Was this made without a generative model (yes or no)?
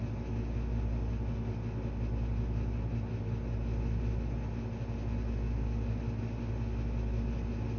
yes